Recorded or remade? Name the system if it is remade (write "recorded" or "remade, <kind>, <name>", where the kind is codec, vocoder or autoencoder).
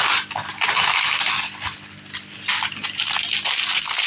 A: recorded